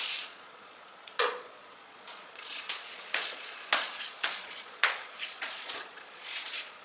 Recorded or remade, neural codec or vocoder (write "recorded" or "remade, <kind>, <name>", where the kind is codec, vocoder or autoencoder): remade, vocoder, Vocos